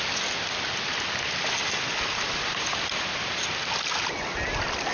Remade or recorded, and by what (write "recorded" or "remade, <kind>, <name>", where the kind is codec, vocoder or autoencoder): recorded